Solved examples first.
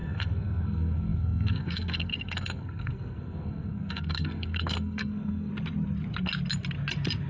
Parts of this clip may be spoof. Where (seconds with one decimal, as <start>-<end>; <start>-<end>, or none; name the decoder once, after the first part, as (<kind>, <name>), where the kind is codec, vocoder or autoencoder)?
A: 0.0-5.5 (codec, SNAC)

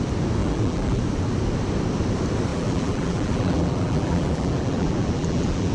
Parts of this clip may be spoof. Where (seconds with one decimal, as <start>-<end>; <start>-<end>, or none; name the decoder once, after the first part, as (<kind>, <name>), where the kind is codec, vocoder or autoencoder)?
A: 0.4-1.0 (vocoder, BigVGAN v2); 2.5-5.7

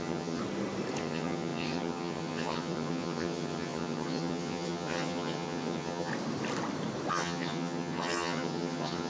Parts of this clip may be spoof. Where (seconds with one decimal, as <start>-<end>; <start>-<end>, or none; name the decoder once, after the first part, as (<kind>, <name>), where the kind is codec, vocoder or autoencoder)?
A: 0.0-0.4 (vocoder, HiFi-GAN); 1.0-6.1; 7.1-9.1

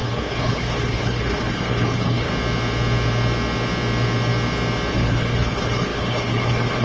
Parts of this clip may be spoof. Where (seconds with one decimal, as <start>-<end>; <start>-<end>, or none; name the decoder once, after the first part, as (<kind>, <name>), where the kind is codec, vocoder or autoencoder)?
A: 0.0-2.3 (codec, HILCodec); 4.9-6.8